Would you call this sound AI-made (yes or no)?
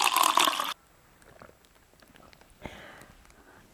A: no